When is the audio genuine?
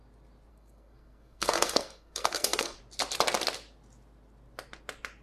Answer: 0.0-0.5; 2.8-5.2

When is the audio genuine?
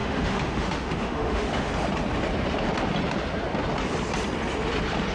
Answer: 1.7-5.1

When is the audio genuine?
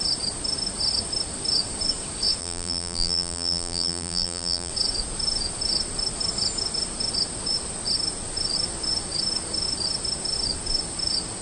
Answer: 0.0-2.4; 4.7-11.4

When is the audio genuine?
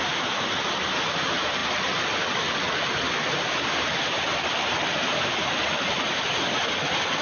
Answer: 0.0-7.2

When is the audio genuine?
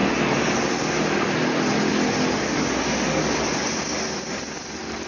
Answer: 0.0-5.1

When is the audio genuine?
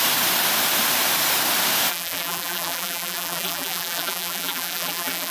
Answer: 0.0-1.9